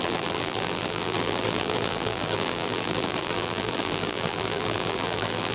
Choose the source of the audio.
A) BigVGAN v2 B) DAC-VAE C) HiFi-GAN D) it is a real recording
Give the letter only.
A